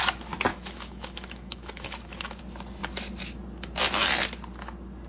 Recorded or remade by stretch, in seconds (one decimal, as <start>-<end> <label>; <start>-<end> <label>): 0.0-0.5 recorded; 0.5-2.4 remade; 2.4-5.1 recorded